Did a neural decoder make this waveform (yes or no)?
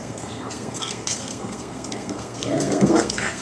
yes